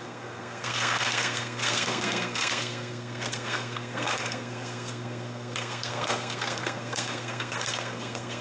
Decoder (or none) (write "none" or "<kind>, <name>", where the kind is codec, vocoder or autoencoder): codec, SNAC